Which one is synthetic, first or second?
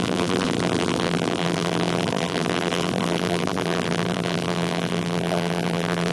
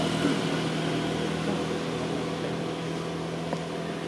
first